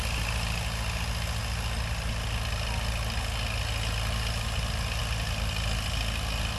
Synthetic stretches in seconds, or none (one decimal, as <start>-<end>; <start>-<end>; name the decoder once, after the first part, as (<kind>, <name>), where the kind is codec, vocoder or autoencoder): none